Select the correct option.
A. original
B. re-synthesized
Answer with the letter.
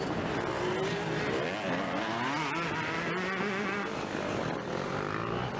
A